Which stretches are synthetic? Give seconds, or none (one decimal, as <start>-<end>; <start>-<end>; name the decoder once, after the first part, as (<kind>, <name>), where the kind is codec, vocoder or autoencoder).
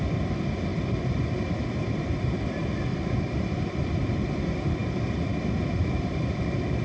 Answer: 0.7-2.0 (vocoder, BigVGAN v2); 2.9-4.1; 4.8-6.8